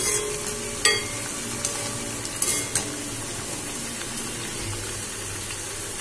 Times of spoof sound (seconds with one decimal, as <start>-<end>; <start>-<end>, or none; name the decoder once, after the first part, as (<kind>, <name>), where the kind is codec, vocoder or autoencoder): none